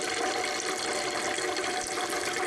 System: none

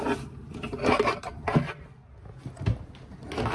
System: none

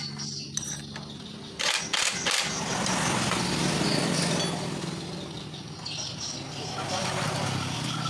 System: none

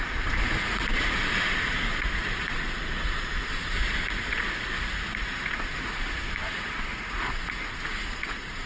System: vocoder, Vocos